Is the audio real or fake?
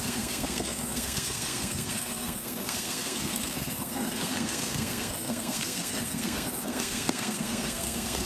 fake